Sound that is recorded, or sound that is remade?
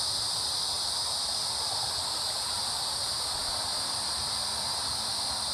remade